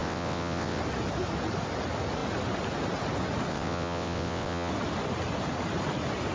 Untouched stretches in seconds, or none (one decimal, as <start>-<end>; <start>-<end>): 0.8-3.5; 4.7-6.3